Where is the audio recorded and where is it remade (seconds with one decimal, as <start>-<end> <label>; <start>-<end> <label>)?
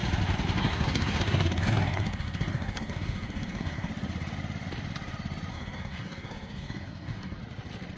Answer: 0.0-0.6 recorded; 0.6-3.9 remade; 3.9-5.5 recorded; 5.5-7.4 remade; 7.4-8.0 recorded